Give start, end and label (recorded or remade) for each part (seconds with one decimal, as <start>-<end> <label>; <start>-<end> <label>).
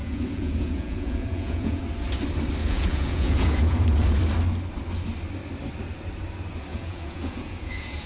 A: 0.0-1.8 remade; 1.8-2.6 recorded; 2.6-4.2 remade; 4.2-6.7 recorded; 6.7-8.1 remade